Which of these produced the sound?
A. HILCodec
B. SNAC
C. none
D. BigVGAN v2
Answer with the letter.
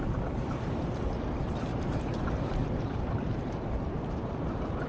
D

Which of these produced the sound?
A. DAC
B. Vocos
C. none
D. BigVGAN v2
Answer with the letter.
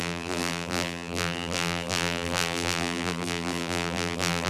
D